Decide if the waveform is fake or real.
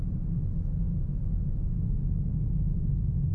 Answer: real